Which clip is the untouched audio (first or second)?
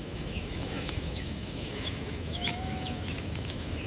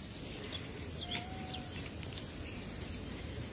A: second